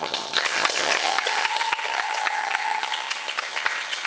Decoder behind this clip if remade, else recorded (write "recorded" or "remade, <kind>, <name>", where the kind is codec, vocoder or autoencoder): remade, vocoder, HiFi-GAN